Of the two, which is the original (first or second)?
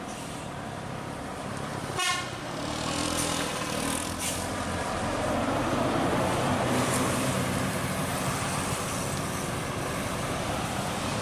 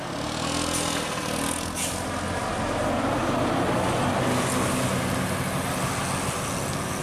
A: second